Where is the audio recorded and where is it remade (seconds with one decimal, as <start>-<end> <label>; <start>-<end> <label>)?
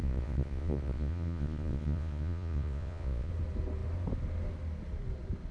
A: 0.0-3.3 remade; 3.3-5.5 recorded